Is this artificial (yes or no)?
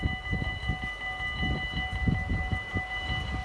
no